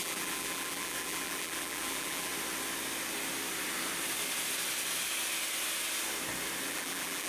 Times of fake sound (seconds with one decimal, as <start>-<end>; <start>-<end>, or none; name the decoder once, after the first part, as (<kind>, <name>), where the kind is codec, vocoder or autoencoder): 0.0-2.3 (vocoder, BigVGAN v2); 6.7-7.3